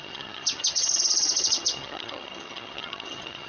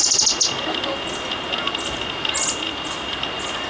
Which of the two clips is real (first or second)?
second